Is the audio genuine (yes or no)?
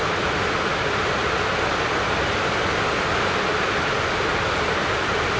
yes